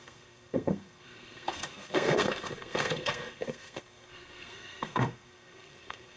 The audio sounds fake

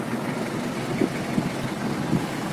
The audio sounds real